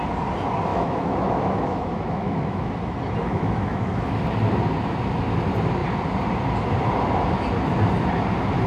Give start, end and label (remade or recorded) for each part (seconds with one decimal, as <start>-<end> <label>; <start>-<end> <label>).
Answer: 0.0-0.7 recorded; 0.7-2.7 remade; 2.7-3.2 recorded; 3.2-4.2 remade; 4.2-8.7 recorded